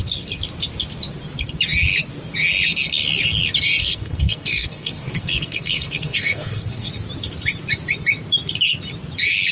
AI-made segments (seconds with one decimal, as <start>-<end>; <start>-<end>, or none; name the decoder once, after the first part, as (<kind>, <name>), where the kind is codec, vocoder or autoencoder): 3.8-6.9 (codec, SNAC)